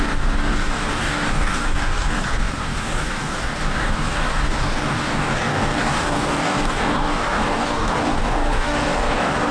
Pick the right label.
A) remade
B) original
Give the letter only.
A